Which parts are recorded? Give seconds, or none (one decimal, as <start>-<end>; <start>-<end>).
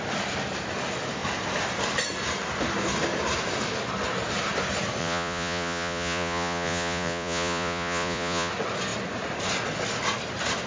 0.0-5.0; 8.5-10.7